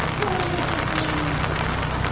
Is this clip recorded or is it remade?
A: recorded